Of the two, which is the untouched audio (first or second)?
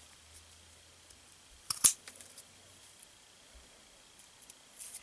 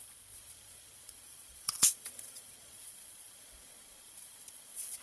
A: first